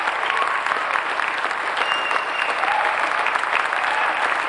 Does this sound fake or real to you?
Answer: real